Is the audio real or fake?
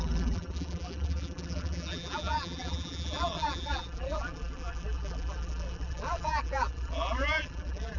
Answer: fake